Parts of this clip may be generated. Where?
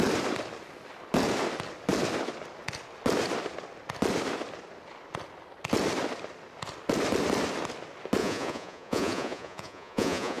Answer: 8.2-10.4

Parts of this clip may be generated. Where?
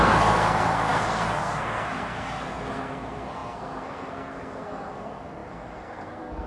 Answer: 0.0-6.5